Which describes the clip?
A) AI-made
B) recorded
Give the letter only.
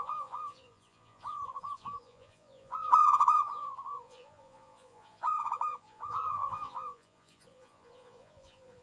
A